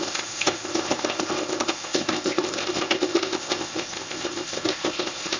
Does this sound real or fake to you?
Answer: fake